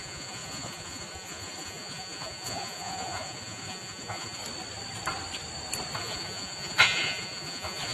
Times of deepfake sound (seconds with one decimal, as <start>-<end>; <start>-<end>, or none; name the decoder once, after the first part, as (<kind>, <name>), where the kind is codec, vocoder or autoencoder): 0.0-4.4 (vocoder, Vocos); 6.0-7.9